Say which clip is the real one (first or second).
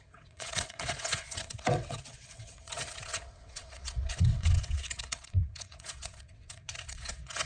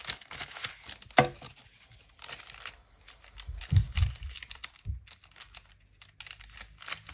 second